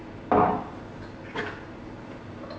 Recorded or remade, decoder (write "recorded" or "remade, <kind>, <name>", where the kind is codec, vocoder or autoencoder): recorded